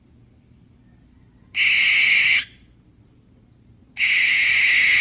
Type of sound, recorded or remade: recorded